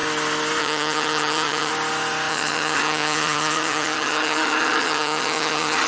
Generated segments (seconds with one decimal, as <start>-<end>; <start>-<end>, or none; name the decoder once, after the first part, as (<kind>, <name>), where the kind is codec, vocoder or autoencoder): 0.6-1.7 (vocoder, HiFi-GAN); 2.3-5.9